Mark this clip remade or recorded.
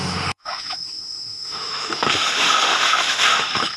remade